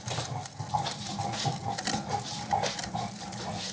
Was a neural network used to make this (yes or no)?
no